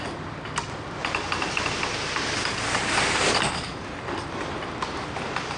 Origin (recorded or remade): recorded